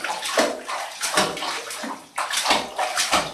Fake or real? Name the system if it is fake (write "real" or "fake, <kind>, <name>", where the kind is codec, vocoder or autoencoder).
fake, vocoder, BigVGAN v2